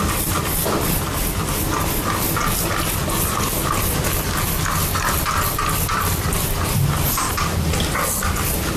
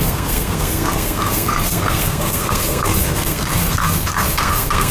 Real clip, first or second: first